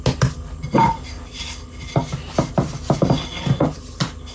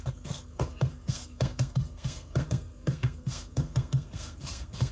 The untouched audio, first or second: first